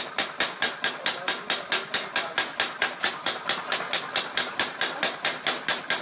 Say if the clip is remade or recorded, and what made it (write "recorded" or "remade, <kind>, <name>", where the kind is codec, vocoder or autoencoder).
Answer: recorded